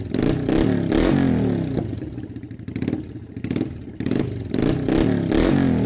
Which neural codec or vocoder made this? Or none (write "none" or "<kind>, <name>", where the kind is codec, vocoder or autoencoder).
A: none